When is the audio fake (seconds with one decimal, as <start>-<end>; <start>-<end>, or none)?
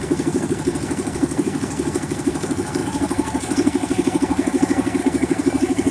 0.0-5.9